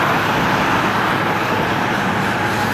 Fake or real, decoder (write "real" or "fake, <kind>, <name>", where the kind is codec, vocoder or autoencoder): real